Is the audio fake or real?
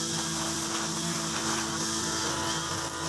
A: real